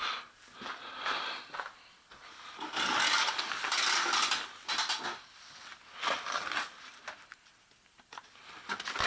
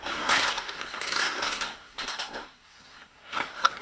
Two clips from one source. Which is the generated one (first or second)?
second